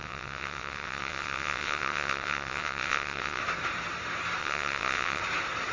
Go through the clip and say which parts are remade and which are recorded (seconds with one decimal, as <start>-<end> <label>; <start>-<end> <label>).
0.0-3.4 remade; 3.4-4.4 recorded; 4.4-5.2 remade; 5.2-5.7 recorded